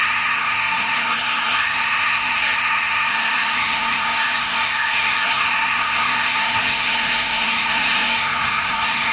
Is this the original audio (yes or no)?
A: no